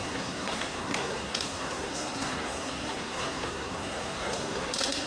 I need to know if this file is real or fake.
fake